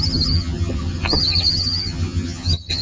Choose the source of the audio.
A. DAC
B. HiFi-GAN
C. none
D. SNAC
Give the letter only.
B